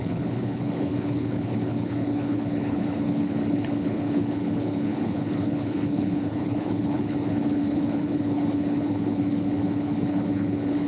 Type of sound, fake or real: fake